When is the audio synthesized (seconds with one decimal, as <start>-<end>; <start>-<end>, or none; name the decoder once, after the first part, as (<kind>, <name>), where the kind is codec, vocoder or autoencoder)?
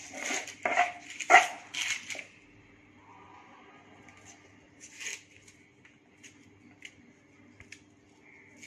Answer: none